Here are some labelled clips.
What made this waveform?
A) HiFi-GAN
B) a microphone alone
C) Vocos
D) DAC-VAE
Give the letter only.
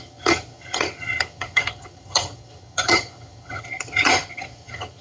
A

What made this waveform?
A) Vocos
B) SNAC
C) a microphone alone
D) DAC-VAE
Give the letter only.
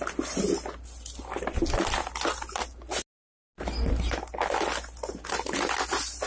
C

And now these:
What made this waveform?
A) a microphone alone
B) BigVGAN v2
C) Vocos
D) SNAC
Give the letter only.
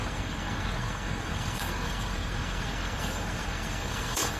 D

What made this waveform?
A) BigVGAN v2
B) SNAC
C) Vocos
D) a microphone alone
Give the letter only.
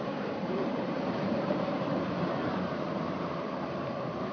A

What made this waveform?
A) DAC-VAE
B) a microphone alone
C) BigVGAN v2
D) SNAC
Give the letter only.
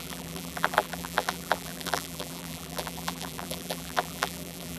C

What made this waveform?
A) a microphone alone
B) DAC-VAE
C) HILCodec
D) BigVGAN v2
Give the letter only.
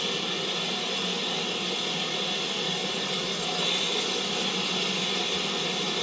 A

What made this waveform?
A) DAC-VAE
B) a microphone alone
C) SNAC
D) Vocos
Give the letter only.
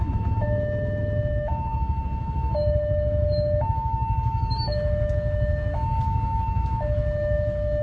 A